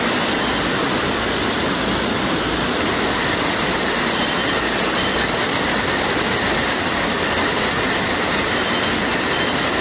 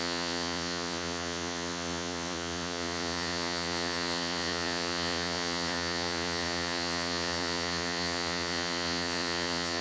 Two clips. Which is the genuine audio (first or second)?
first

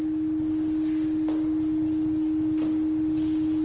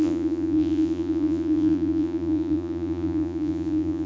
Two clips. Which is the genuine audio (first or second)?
first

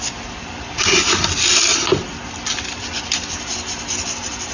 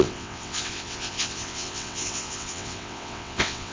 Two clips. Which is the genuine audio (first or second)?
first